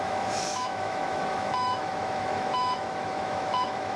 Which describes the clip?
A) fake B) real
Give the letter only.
A